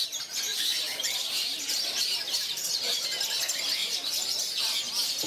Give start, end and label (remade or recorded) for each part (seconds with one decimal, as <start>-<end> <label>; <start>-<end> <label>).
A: 0.0-0.5 recorded; 0.5-2.7 remade; 2.7-3.8 recorded; 3.8-4.6 remade; 4.6-5.3 recorded